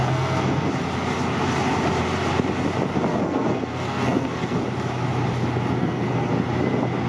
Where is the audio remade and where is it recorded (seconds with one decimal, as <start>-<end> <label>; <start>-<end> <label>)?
0.0-0.7 remade; 0.7-3.1 recorded; 3.1-4.6 remade; 4.6-5.8 recorded; 5.8-6.3 remade; 6.3-7.1 recorded